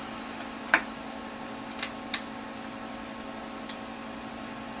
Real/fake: real